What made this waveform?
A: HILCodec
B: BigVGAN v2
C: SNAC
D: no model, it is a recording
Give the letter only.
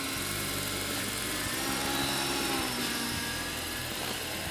B